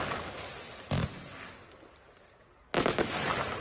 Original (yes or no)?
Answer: yes